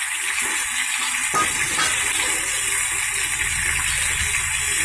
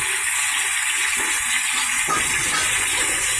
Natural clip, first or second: first